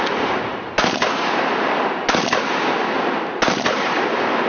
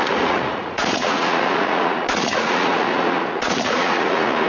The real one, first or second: first